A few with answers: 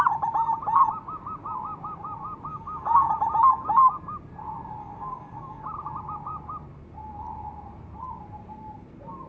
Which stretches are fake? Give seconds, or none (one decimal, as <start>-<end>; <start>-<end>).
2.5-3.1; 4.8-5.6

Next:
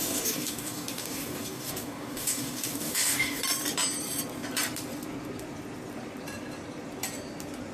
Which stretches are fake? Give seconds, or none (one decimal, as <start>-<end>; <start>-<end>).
0.0-3.4

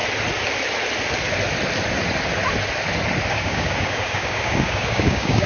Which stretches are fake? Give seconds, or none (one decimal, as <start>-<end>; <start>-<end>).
3.3-5.5